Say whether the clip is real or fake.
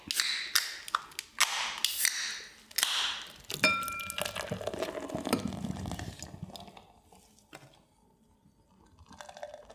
real